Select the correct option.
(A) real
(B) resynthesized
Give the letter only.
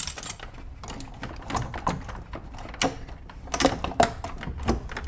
A